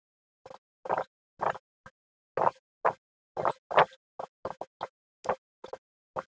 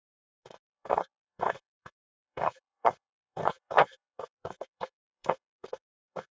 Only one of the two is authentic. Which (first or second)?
first